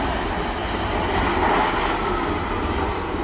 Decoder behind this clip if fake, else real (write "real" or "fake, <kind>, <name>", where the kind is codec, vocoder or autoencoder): real